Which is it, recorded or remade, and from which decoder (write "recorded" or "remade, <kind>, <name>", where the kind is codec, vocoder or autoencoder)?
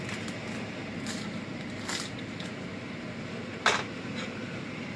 recorded